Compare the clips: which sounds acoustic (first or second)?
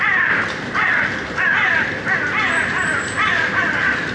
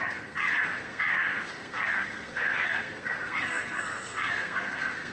first